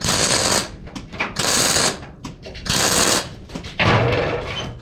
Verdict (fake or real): fake